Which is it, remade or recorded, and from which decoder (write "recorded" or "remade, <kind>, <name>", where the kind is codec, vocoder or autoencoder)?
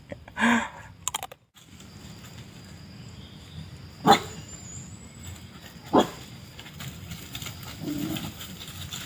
recorded